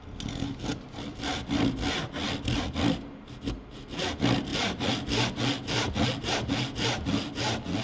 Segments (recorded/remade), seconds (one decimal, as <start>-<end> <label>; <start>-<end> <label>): 0.0-7.8 recorded